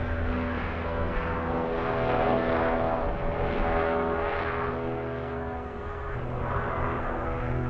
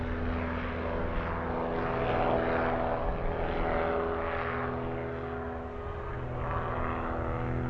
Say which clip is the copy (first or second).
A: first